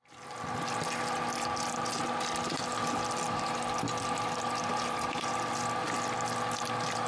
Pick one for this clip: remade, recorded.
remade